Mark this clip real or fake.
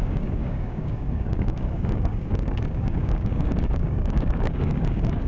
fake